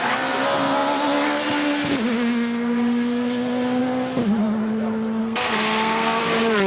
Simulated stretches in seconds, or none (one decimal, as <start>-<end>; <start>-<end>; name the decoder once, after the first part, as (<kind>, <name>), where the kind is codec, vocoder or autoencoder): 5.2-6.2 (codec, SNAC)